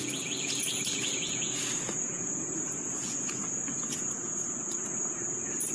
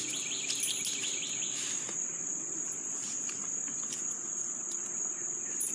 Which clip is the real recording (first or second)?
second